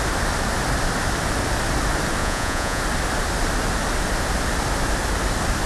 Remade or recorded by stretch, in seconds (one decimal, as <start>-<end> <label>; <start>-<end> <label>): 0.0-2.2 recorded; 2.2-2.8 remade; 2.8-5.7 recorded